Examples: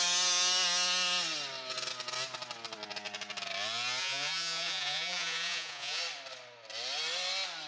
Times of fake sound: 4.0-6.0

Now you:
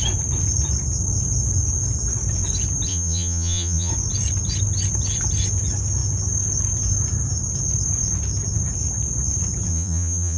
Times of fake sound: 2.9-3.9; 9.7-10.4

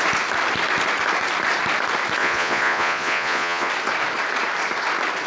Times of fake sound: 2.2-3.7